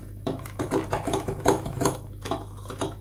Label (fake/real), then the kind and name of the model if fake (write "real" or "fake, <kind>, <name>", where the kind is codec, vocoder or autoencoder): fake, autoencoder, DAC-VAE